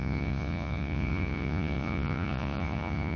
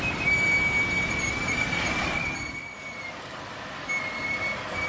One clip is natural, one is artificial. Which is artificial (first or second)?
first